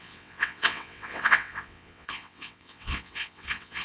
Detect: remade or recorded remade